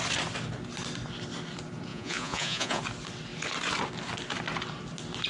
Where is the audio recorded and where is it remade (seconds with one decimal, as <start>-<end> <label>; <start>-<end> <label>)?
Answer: 0.0-1.9 recorded; 1.9-2.8 remade; 2.8-5.3 recorded